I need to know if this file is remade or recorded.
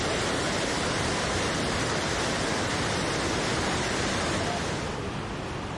recorded